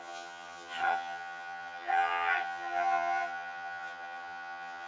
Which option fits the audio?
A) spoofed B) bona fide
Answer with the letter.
A